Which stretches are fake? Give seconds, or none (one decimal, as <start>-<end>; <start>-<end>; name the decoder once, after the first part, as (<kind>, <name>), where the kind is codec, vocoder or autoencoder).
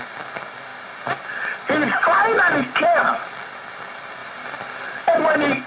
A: 4.2-5.1 (vocoder, BigVGAN v2)